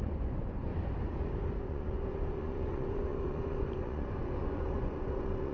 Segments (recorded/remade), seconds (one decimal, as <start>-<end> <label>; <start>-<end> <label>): 0.0-0.7 remade; 0.7-1.6 recorded; 1.6-5.5 remade